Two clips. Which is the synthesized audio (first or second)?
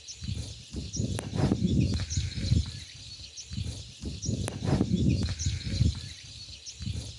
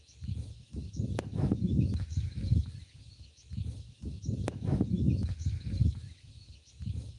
second